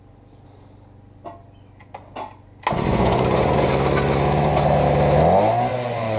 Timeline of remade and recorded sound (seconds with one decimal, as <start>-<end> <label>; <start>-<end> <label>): 0.0-2.9 recorded; 2.9-3.7 remade; 3.7-5.7 recorded; 5.7-6.2 remade